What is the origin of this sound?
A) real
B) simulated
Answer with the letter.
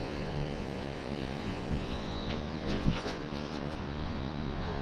B